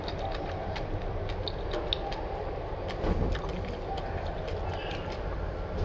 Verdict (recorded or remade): recorded